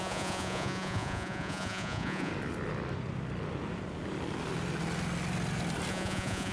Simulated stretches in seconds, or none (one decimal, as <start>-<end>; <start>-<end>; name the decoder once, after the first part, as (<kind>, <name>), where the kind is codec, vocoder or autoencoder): 0.0-2.3 (vocoder, Vocos); 5.9-6.5